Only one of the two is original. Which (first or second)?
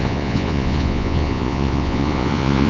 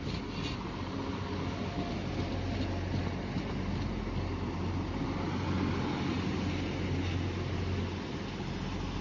second